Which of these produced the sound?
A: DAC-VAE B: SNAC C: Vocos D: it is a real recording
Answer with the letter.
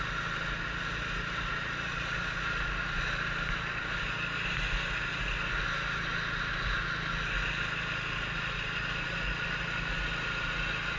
D